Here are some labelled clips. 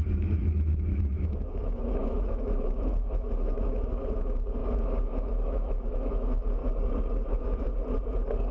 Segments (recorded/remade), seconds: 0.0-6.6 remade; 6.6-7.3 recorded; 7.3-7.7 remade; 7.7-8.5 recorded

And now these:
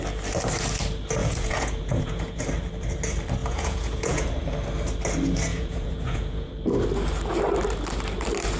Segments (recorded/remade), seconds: 0.0-1.2 recorded; 1.2-2.4 remade; 2.4-3.4 recorded; 3.4-4.3 remade; 4.3-5.5 recorded; 5.5-6.5 remade; 6.5-8.6 recorded

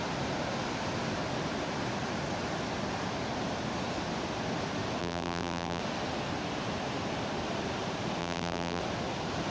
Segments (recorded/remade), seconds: 0.0-5.0 recorded; 5.0-5.8 remade; 5.8-8.2 recorded; 8.2-8.8 remade; 8.8-9.5 recorded